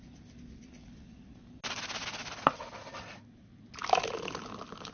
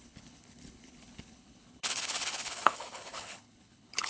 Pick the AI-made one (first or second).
second